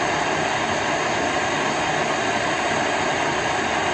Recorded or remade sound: recorded